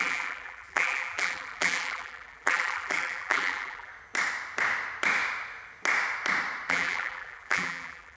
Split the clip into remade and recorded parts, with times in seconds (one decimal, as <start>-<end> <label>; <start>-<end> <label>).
0.0-3.9 remade; 3.9-6.7 recorded; 6.7-8.2 remade